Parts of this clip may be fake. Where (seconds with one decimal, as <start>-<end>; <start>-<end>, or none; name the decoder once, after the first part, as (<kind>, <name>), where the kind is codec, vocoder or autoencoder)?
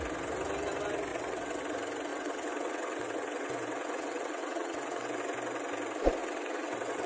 1.1-1.6 (vocoder, WaveNeXt); 2.1-5.2; 6.2-7.1